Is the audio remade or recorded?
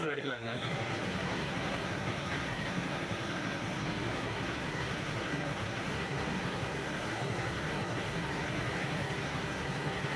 remade